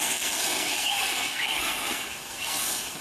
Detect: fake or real fake